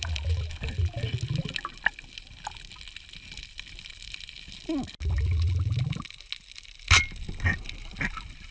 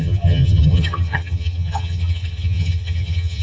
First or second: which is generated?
second